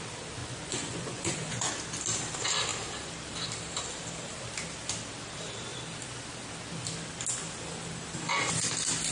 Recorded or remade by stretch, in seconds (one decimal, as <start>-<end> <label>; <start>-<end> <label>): 0.0-0.4 recorded; 0.4-1.7 remade; 1.7-9.1 recorded